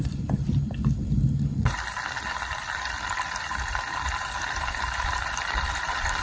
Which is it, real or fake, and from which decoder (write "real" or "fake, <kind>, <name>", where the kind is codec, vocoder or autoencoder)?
fake, vocoder, BigVGAN v2